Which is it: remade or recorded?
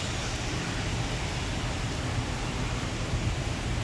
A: remade